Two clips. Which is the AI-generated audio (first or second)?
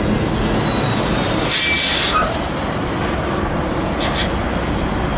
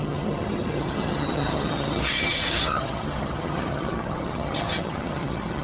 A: second